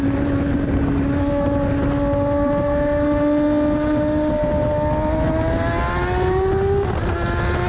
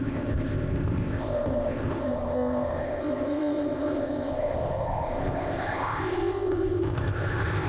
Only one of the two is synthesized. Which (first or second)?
second